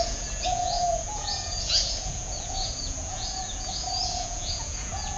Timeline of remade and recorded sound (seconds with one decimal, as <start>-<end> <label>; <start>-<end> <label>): 0.0-5.2 remade